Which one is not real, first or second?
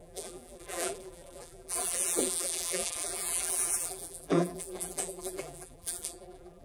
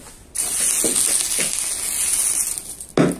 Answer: first